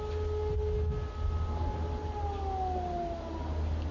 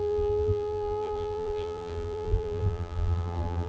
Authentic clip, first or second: first